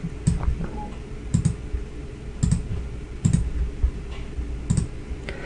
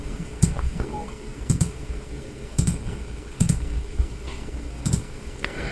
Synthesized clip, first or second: second